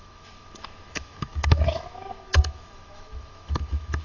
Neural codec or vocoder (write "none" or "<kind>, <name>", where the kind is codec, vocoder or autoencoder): autoencoder, DAC-VAE